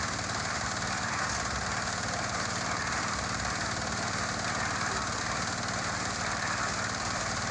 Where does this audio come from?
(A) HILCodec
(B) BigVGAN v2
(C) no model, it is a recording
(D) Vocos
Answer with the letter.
B